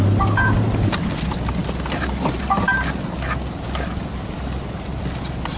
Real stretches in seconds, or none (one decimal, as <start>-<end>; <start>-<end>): 0.0-5.6